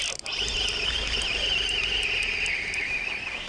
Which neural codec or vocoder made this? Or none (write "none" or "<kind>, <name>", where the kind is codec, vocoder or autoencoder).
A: none